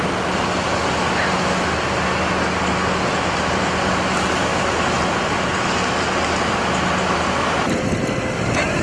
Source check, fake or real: real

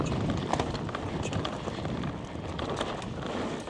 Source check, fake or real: real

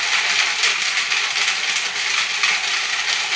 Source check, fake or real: real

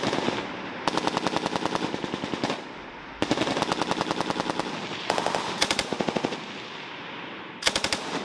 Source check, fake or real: real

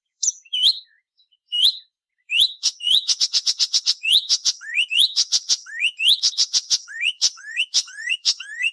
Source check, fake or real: fake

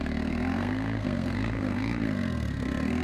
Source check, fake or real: fake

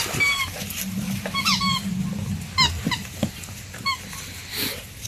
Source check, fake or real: real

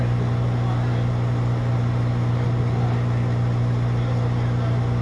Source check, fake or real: real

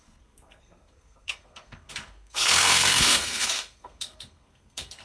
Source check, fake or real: fake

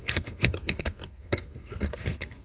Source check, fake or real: fake